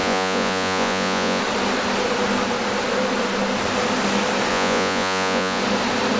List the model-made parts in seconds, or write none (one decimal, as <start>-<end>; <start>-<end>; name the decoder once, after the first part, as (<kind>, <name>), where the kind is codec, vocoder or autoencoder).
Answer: 0.0-1.4 (vocoder, Vocos); 4.5-5.6